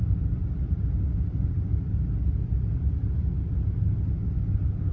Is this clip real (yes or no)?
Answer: yes